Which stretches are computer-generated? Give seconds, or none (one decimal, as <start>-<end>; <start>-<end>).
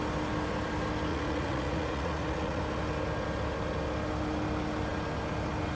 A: 1.1-2.6